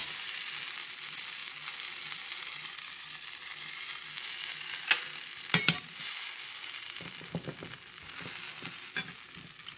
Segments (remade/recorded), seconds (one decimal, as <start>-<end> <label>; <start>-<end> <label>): 0.0-9.8 recorded